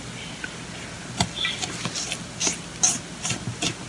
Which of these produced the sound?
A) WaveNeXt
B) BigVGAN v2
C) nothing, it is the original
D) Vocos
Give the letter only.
C